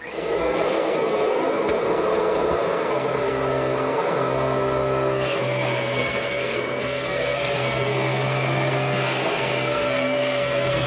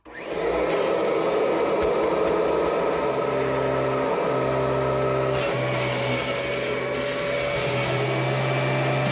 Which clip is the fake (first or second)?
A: first